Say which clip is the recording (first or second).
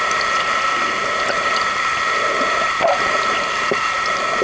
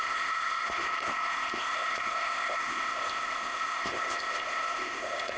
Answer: first